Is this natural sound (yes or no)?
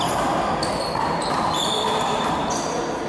yes